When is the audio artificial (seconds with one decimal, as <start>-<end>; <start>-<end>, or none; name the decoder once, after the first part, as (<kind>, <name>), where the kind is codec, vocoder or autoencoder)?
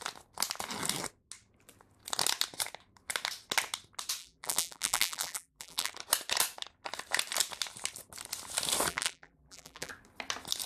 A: 4.2-5.9 (vocoder, BigVGAN v2); 8.9-9.9